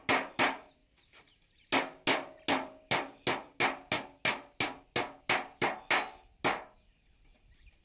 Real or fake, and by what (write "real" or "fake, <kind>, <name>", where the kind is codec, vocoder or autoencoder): real